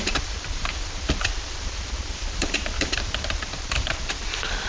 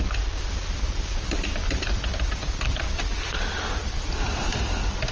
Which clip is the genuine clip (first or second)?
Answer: second